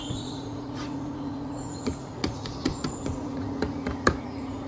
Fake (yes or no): yes